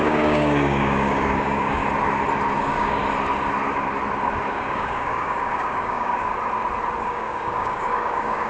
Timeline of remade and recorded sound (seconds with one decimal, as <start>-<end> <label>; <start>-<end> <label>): 0.0-1.8 remade; 1.8-2.6 recorded; 2.6-3.0 remade; 3.0-4.5 recorded; 4.5-6.3 remade; 6.3-7.0 recorded; 7.0-8.5 remade